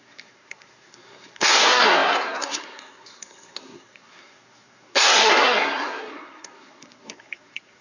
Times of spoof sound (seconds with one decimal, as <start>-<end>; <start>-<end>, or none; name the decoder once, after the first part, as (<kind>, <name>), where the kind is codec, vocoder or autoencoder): 0.0-7.8 (codec, SNAC)